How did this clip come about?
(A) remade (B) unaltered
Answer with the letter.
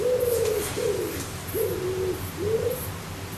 B